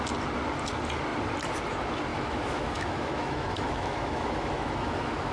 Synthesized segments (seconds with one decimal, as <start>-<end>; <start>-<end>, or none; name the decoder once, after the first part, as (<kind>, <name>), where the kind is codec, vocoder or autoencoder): 2.1-5.3 (autoencoder, DAC-VAE)

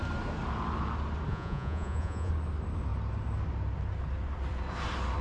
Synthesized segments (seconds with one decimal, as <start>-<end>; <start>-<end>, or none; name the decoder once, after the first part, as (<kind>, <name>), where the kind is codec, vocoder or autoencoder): 1.3-2.3 (vocoder, Vocos)